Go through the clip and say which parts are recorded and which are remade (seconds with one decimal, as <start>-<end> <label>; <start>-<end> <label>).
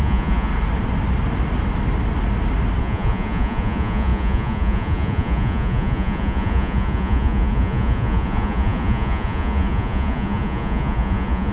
0.0-0.5 remade; 0.5-2.8 recorded; 2.8-11.5 remade